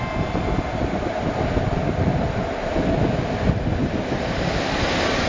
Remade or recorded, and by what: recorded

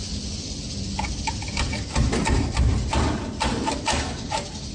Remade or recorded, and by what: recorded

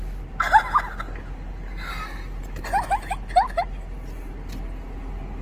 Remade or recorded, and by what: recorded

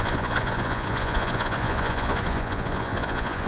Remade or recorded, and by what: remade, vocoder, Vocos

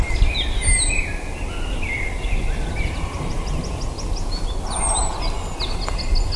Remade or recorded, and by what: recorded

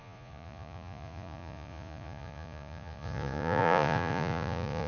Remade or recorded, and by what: remade, vocoder, Vocos